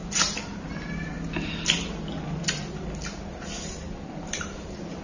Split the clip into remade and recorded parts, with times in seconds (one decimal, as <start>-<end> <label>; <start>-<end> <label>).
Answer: 0.0-2.5 recorded; 2.5-5.0 remade